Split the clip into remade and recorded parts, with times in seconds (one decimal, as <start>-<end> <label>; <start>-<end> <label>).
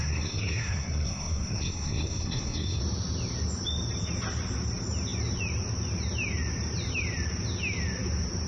0.0-2.8 remade; 2.8-8.5 recorded